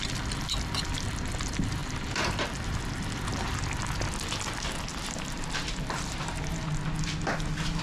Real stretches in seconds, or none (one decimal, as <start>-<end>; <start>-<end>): 0.0-4.9; 6.7-7.8